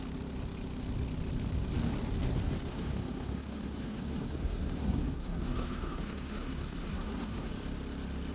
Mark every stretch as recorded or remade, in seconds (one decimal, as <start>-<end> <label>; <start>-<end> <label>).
0.0-2.7 recorded; 2.7-7.5 remade; 7.5-8.3 recorded